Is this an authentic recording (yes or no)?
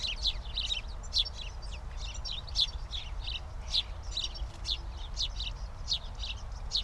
yes